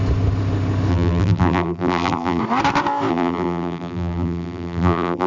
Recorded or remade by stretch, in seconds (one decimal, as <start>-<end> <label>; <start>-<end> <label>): 0.0-0.9 recorded; 0.9-2.4 remade; 2.4-3.1 recorded; 3.1-5.3 remade